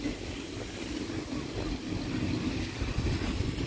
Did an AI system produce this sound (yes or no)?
no